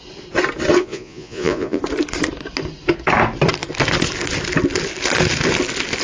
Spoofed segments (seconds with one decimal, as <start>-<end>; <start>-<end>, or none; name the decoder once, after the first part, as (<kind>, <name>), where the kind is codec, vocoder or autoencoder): 0.8-1.8 (vocoder, Vocos)